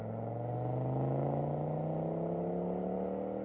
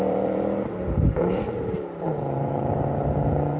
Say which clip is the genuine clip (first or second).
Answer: first